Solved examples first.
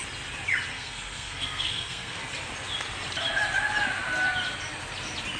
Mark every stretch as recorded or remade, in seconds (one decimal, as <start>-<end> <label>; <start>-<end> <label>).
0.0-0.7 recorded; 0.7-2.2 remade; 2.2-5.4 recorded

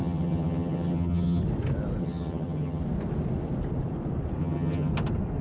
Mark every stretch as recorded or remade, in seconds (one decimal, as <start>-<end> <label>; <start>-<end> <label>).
0.0-1.4 remade; 1.4-2.0 recorded; 2.0-2.8 remade; 2.8-4.4 recorded; 4.4-4.9 remade; 4.9-5.4 recorded

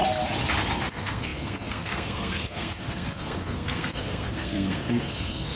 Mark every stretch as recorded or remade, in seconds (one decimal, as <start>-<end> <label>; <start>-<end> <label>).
0.0-0.9 recorded; 0.9-5.6 remade